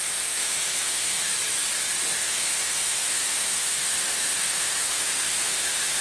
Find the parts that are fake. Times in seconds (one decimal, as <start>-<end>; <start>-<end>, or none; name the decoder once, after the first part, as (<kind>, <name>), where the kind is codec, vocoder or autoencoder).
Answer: 0.0-1.3 (autoencoder, DAC-VAE); 2.2-6.0

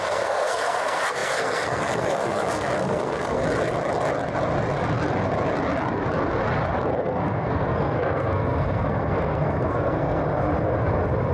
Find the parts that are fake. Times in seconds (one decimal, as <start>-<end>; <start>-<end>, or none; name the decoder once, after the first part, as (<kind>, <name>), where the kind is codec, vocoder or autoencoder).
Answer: 0.0-3.4 (codec, SNAC); 7.0-10.2

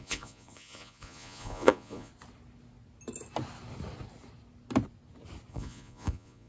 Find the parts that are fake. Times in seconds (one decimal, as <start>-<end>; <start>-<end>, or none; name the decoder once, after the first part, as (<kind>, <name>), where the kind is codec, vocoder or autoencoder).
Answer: 0.0-2.1 (vocoder, Vocos); 5.5-6.5

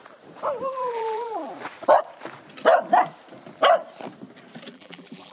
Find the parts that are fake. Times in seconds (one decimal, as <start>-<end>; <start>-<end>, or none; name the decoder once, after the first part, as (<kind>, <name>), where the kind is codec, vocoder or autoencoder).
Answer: 0.6-1.5 (vocoder, BigVGAN v2); 4.7-5.3